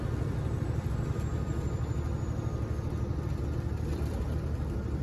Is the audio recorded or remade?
recorded